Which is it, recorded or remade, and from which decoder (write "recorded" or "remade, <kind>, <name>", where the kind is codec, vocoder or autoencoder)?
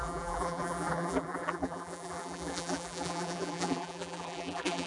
remade, vocoder, BigVGAN v2